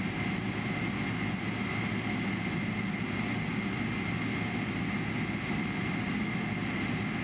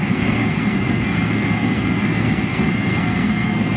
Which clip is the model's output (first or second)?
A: second